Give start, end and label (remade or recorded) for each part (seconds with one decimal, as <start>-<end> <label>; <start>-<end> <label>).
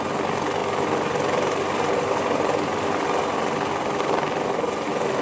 0.0-5.2 recorded